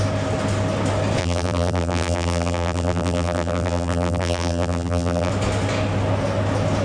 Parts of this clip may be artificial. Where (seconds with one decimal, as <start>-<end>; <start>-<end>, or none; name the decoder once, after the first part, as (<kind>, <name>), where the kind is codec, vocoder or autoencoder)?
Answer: 1.2-5.3 (vocoder, BigVGAN v2)